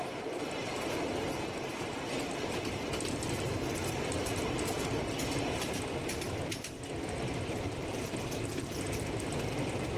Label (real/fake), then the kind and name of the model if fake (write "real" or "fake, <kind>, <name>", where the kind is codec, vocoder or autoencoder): real